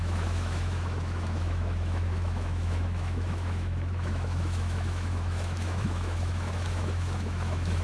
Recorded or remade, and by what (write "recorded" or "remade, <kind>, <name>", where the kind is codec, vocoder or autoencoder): remade, autoencoder, DAC-VAE